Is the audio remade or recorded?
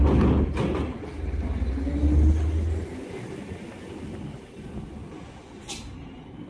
recorded